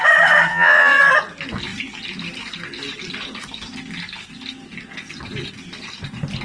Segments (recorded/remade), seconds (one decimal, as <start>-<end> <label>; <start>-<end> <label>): 0.0-0.5 recorded; 0.5-1.0 remade; 1.0-6.4 recorded

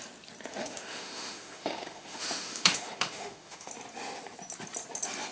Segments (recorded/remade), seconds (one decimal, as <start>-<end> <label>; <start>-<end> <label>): 0.0-0.5 recorded; 0.5-3.7 remade; 3.7-5.3 recorded

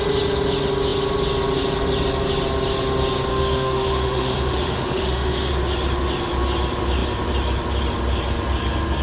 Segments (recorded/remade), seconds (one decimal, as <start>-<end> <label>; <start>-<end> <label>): 0.0-3.3 recorded; 3.3-5.5 remade; 5.5-9.0 recorded

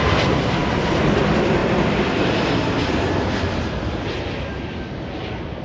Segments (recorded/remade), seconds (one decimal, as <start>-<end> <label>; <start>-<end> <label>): 0.0-0.6 recorded; 0.6-1.2 remade; 1.2-1.6 recorded; 1.6-3.3 remade; 3.3-5.6 recorded

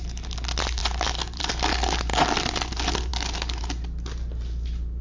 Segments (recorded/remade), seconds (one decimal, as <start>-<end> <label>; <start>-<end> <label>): 0.0-5.0 recorded

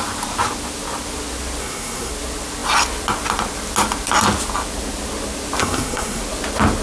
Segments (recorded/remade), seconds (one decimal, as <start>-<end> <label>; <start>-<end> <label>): 0.0-1.6 recorded; 1.6-2.1 remade; 2.1-5.6 recorded; 5.6-6.2 remade; 6.2-6.8 recorded

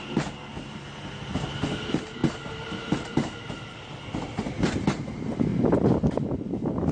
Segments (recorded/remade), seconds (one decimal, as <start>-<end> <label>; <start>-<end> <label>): 0.0-6.9 recorded